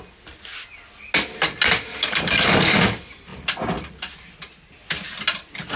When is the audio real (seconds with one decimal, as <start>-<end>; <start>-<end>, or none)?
0.0-1.9; 2.9-5.8